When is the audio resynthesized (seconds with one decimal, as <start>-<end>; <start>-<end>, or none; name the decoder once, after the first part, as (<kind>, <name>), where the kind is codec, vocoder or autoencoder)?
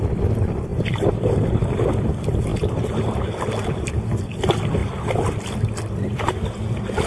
0.7-1.8 (vocoder, BigVGAN v2); 2.5-3.9